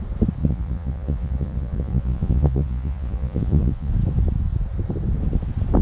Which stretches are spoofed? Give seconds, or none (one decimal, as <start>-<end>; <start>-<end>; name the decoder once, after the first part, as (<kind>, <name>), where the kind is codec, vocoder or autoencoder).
0.4-3.9 (vocoder, Vocos)